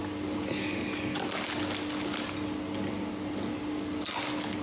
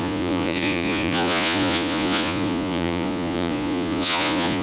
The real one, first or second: first